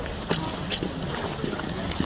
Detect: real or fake real